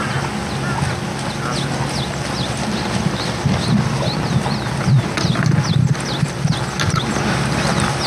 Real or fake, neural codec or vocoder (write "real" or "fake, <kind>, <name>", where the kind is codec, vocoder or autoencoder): real